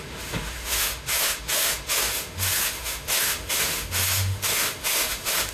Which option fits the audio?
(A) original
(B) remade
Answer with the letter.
B